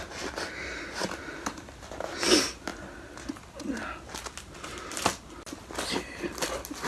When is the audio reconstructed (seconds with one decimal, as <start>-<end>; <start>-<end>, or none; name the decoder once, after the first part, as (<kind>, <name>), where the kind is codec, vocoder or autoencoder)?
none